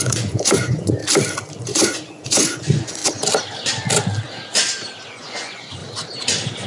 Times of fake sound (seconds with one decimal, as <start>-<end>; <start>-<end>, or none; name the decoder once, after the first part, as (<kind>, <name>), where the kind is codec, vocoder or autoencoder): 0.0-1.0 (vocoder, Vocos); 1.6-3.0; 5.1-5.8

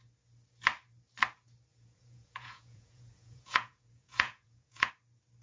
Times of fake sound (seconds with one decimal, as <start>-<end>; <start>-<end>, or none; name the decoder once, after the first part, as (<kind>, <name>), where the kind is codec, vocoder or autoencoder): 1.7-4.9 (vocoder, Vocos)

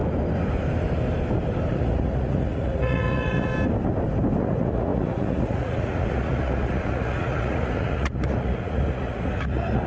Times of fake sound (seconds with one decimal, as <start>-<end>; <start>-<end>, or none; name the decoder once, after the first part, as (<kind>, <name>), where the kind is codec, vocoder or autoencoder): 1.7-3.5 (vocoder, Vocos); 4.4-9.9

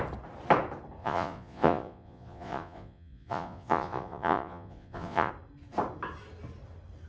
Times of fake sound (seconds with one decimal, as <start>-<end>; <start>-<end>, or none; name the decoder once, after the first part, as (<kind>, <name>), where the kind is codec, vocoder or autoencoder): 1.0-5.3 (vocoder, Vocos)

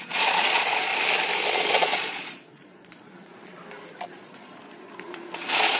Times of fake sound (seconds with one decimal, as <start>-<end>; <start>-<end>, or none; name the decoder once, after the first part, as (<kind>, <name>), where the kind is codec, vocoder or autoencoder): 0.0-0.9 (vocoder, Vocos); 1.7-3.6; 4.1-5.8

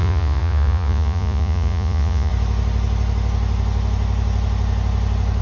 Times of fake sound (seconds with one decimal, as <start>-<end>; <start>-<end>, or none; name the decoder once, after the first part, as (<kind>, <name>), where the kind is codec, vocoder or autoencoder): 0.0-2.3 (vocoder, Vocos)

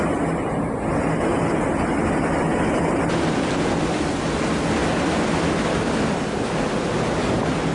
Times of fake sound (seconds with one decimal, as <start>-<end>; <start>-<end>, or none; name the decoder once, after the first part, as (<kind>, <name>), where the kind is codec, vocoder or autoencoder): none